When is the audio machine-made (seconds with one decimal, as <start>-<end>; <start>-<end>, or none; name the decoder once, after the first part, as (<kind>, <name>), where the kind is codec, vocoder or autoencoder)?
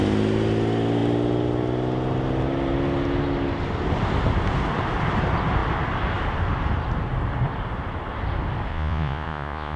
8.7-9.8 (vocoder, Vocos)